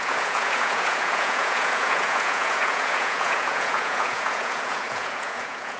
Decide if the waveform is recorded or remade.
remade